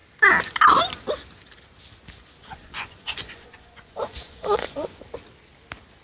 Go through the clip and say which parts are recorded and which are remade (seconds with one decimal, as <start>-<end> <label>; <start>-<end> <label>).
0.0-2.4 recorded; 2.4-5.0 remade; 5.0-6.0 recorded